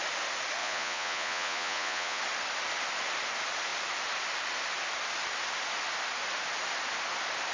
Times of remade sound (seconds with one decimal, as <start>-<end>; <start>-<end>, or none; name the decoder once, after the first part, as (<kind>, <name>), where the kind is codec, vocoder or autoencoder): 0.6-2.2 (vocoder, Vocos)